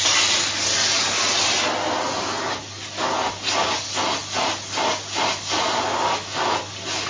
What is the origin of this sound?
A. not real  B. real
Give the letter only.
B